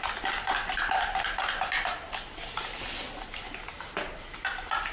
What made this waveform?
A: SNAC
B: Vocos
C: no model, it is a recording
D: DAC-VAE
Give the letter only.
C